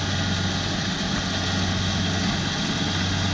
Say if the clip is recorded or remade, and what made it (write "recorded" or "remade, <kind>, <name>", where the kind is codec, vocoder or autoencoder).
recorded